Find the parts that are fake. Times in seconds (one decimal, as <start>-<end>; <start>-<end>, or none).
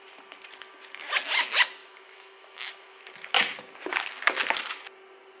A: 1.8-3.1